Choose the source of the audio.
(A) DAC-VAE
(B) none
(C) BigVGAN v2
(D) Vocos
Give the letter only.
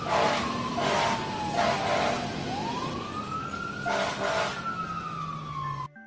B